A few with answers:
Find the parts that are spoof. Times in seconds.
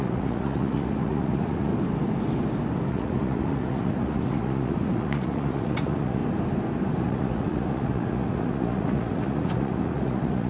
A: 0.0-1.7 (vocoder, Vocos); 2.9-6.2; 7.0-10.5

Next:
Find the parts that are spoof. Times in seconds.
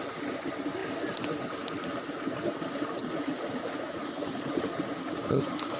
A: 3.0-4.8 (vocoder, Vocos)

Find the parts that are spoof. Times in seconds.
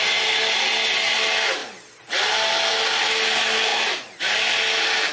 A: none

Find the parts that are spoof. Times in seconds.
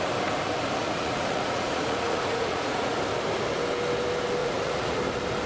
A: 0.8-2.9 (vocoder, Vocos); 4.4-5.0